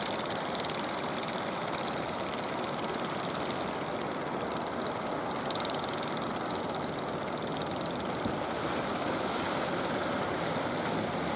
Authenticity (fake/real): real